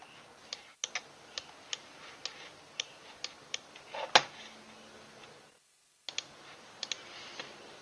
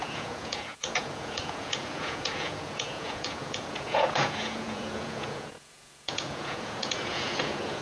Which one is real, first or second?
first